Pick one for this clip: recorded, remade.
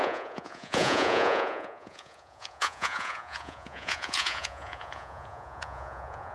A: remade